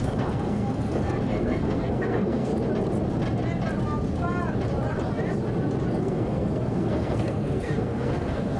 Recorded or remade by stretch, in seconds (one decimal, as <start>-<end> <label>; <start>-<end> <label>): 0.0-2.5 remade; 2.5-6.0 recorded; 6.0-8.6 remade